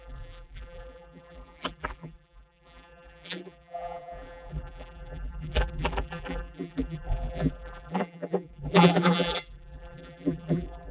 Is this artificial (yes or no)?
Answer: yes